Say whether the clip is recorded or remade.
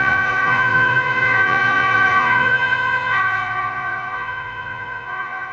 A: remade